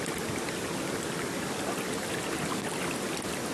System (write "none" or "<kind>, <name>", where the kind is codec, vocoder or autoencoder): none